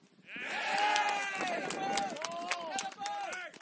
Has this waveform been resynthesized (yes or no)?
no